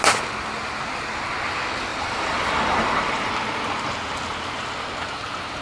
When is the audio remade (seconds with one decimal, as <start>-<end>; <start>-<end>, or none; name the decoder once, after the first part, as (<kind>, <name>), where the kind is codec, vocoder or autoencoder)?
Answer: 1.9-3.3 (vocoder, BigVGAN v2)